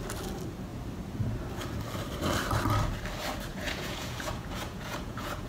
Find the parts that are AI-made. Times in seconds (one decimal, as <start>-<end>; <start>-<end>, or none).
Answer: 3.5-5.5